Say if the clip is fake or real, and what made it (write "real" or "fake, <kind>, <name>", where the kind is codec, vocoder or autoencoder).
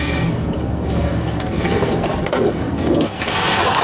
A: fake, codec, SNAC